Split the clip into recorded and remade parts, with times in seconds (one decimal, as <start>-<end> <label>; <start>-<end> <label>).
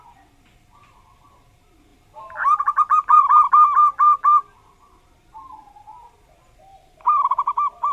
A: 0.0-6.0 recorded; 6.0-7.1 remade; 7.1-7.9 recorded